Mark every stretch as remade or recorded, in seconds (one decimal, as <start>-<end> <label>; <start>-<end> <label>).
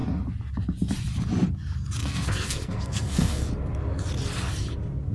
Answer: 0.0-2.0 recorded; 2.0-3.5 remade; 3.5-5.1 recorded